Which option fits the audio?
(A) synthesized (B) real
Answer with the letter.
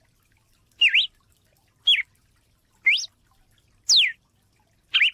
B